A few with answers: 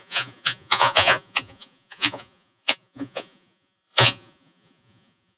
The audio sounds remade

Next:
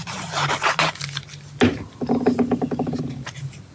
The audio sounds recorded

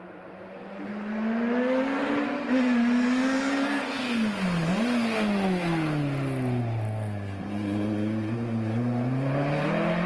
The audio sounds recorded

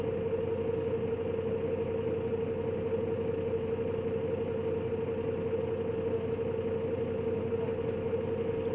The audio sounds recorded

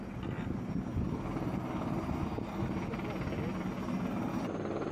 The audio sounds recorded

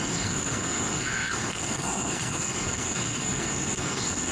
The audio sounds remade